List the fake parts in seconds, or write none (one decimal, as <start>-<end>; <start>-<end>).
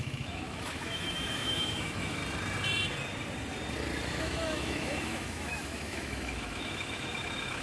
0.0-2.2; 4.2-7.6